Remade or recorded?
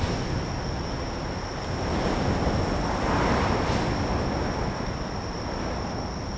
recorded